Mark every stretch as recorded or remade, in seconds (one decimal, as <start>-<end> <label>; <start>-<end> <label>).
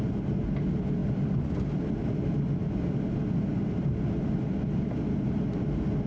0.0-6.1 recorded